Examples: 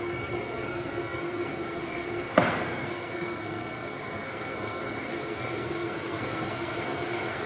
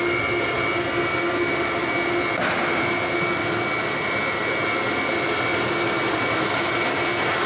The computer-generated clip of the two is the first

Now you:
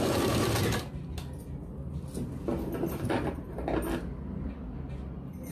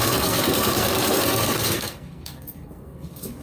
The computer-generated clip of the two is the second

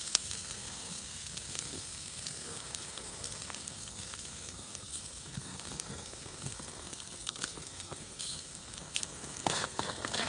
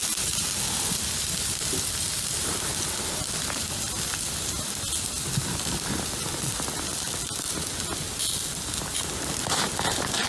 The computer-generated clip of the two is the first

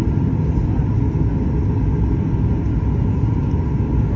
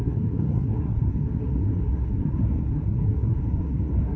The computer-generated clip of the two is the second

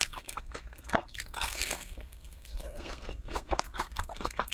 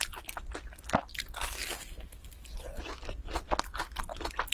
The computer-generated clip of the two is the first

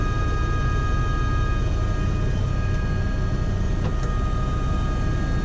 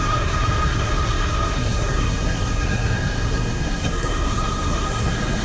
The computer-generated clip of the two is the second